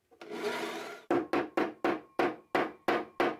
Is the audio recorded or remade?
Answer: recorded